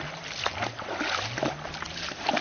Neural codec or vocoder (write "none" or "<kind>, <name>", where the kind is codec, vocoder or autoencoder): none